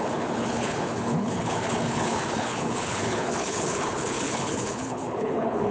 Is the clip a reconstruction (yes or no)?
yes